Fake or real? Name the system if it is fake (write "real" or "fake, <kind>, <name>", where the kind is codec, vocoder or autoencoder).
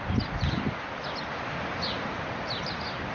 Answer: real